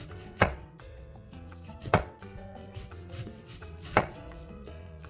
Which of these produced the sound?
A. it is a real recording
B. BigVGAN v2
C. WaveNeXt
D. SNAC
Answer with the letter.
C